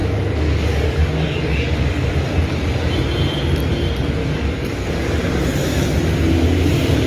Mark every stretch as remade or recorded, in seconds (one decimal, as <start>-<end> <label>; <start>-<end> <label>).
0.0-2.1 remade; 2.1-4.2 recorded; 4.2-4.9 remade; 4.9-7.1 recorded